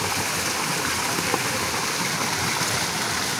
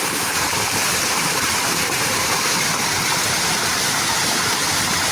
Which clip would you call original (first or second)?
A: first